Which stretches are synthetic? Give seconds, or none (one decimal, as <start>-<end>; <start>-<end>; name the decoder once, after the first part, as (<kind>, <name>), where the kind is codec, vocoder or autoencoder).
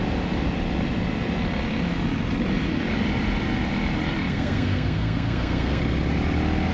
4.3-5.8 (codec, SNAC)